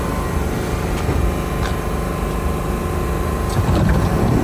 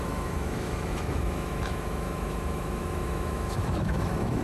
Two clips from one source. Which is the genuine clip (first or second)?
first